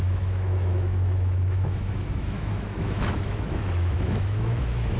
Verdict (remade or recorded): remade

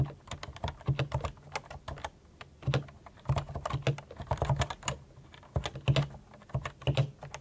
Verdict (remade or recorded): recorded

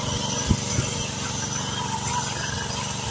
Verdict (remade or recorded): recorded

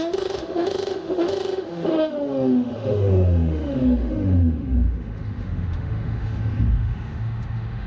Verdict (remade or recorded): remade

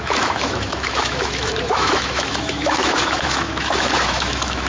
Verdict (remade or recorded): remade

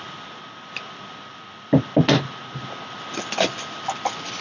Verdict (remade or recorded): recorded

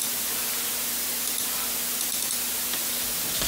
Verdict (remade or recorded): recorded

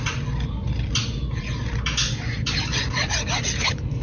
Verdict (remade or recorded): recorded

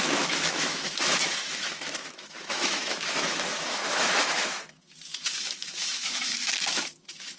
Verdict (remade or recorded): remade